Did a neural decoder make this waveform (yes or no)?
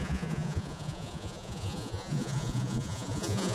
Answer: yes